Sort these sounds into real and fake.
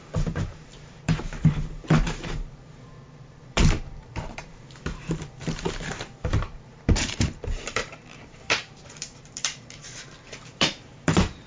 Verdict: fake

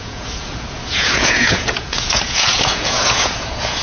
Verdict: fake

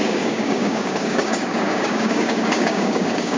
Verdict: fake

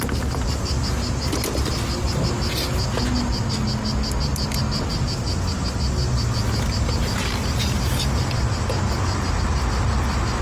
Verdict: real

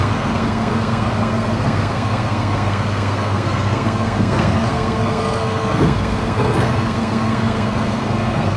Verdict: fake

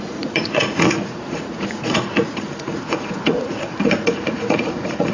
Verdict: fake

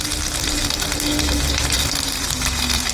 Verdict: fake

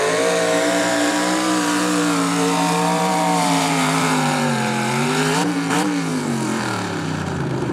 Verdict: fake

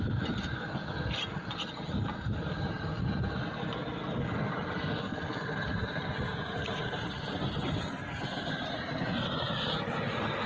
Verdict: real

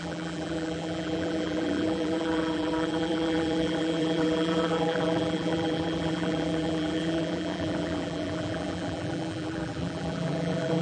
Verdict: fake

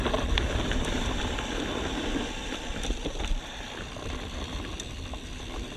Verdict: real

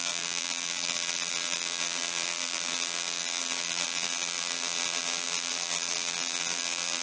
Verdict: fake